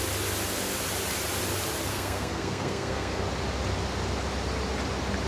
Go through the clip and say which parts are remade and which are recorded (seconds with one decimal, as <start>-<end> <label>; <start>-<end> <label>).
0.0-1.9 recorded; 1.9-3.2 remade; 3.2-5.3 recorded